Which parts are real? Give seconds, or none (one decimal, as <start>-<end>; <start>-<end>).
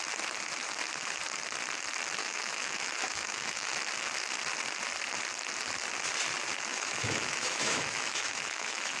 0.0-2.2; 3.7-6.7